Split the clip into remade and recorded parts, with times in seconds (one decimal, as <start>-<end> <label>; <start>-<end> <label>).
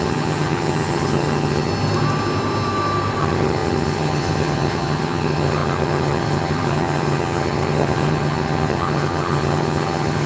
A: 0.0-1.7 remade; 1.7-3.2 recorded; 3.2-10.3 remade